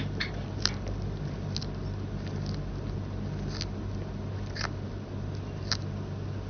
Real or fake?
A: real